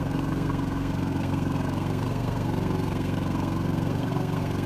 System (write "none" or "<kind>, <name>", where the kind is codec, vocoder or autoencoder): codec, SNAC